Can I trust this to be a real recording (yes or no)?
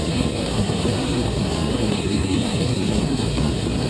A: no